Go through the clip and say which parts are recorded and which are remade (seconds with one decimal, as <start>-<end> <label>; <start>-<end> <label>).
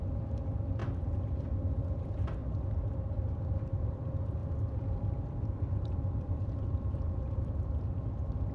0.0-0.8 recorded; 0.8-1.6 remade; 1.6-2.4 recorded; 2.4-4.0 remade; 4.0-4.4 recorded; 4.4-7.5 remade; 7.5-8.5 recorded